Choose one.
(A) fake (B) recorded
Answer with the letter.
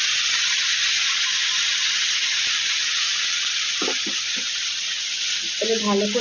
B